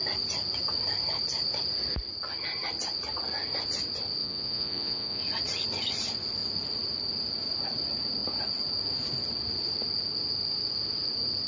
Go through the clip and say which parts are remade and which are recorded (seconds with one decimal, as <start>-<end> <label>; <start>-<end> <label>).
0.0-4.2 recorded; 4.2-5.2 remade; 5.2-11.5 recorded